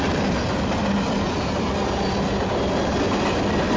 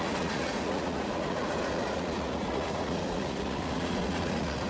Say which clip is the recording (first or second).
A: first